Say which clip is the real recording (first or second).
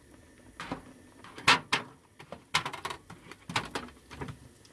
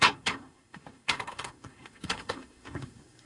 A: first